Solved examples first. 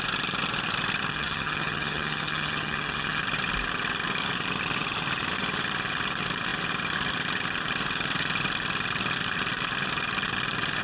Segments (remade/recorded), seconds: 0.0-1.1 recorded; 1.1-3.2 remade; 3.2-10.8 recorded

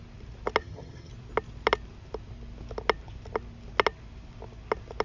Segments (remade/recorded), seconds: 0.0-0.6 recorded; 0.6-1.1 remade; 1.1-5.0 recorded

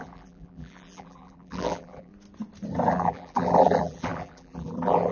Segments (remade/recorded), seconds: 0.0-2.1 remade; 2.1-2.9 recorded; 2.9-5.1 remade

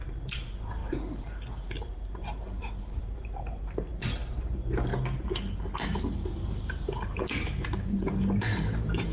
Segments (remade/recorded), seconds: 0.0-4.9 remade; 4.9-5.9 recorded; 5.9-9.1 remade

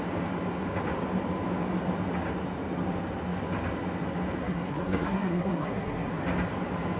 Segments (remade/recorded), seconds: 0.0-4.4 recorded; 4.4-6.1 remade; 6.1-7.0 recorded

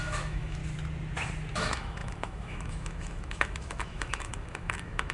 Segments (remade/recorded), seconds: 0.0-0.6 remade; 0.6-1.5 recorded; 1.5-5.1 remade

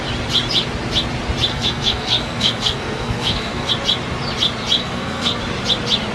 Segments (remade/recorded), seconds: 0.0-1.5 recorded; 1.5-3.7 remade; 3.7-4.8 recorded; 4.8-5.4 remade; 5.4-6.1 recorded